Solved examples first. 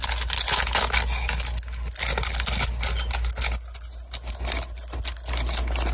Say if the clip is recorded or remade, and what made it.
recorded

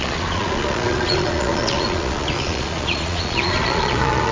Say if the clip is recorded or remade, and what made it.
remade, vocoder, Vocos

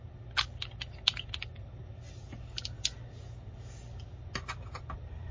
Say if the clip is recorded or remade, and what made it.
recorded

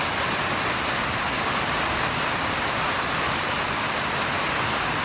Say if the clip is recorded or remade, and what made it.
recorded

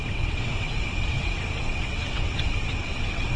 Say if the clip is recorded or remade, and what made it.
remade, vocoder, WaveNeXt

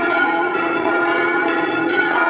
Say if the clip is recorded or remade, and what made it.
remade, vocoder, Vocos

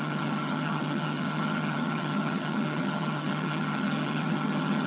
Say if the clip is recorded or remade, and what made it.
remade, vocoder, HiFi-GAN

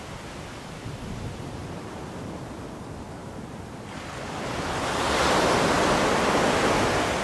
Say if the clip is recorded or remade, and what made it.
recorded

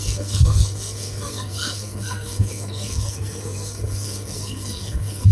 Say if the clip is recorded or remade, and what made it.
remade, codec, SNAC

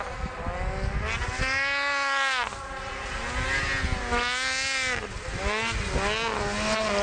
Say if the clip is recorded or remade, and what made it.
recorded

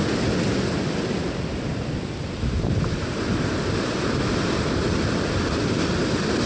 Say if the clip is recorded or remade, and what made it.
recorded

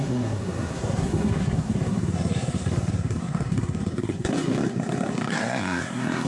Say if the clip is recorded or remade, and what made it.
remade, codec, SNAC